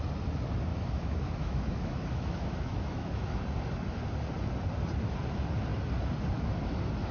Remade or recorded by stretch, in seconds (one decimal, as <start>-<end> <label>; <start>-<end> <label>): 0.0-0.7 recorded; 0.7-3.4 remade; 3.4-7.1 recorded